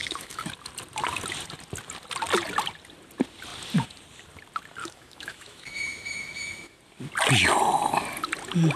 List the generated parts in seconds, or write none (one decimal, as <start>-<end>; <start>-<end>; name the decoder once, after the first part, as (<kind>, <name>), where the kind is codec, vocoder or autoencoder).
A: 0.0-0.5 (autoencoder, DAC-VAE); 4.8-6.8